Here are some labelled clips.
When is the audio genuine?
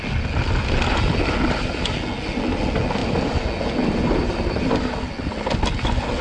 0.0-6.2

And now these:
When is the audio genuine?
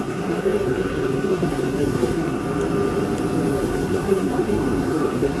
2.4-3.5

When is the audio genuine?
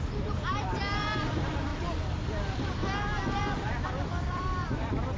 1.7-2.3; 2.8-3.4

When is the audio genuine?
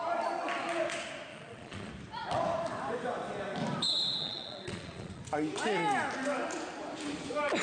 0.0-1.3; 1.9-4.2; 5.2-7.6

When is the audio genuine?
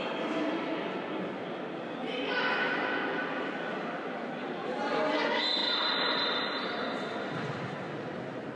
0.0-3.2; 3.7-5.6; 6.7-8.6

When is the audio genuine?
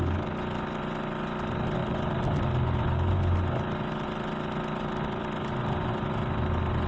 0.0-6.9